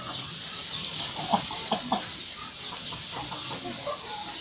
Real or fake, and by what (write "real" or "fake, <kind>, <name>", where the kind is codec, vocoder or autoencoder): real